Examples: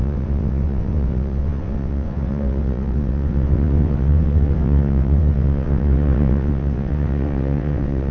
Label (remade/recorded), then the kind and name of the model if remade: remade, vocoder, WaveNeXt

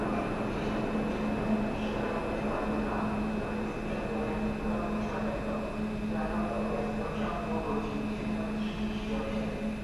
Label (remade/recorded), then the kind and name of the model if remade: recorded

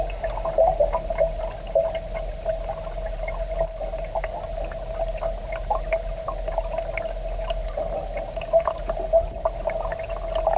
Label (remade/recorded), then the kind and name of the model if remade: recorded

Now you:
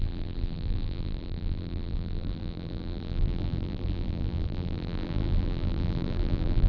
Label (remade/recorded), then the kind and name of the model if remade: remade, vocoder, BigVGAN v2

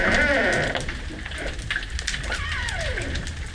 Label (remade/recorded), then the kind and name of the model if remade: recorded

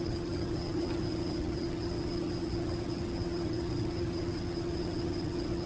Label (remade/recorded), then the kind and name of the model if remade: remade, vocoder, HiFi-GAN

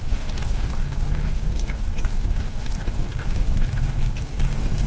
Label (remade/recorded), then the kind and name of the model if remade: remade, codec, DAC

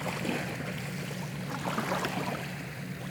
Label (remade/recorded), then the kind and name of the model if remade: recorded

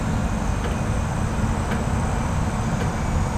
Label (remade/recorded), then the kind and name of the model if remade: recorded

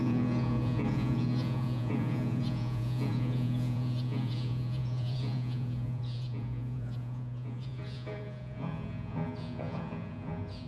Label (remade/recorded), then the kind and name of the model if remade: remade, vocoder, Vocos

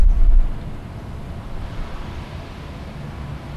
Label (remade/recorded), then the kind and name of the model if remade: recorded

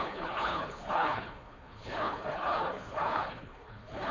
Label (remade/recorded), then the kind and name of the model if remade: remade, codec, HILCodec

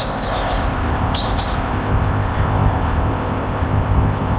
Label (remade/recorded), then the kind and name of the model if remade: remade, codec, ZipCodec